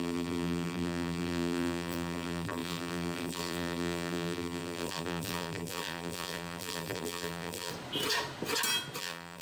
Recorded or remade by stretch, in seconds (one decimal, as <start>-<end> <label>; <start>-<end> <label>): 0.0-7.7 remade; 7.7-9.0 recorded; 9.0-9.4 remade